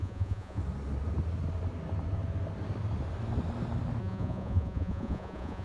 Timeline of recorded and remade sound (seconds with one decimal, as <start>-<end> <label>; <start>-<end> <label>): 0.0-0.6 remade; 0.6-4.0 recorded; 4.0-5.6 remade